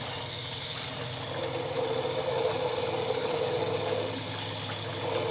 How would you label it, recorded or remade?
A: recorded